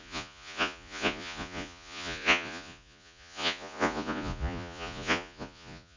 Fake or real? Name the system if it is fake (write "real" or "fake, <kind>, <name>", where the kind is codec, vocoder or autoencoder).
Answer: fake, vocoder, Vocos